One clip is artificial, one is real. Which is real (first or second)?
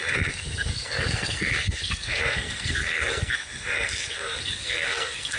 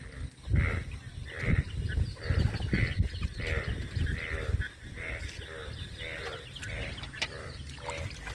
second